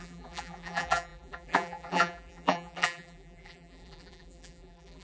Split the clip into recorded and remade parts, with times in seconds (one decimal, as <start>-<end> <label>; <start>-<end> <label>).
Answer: 0.0-5.0 remade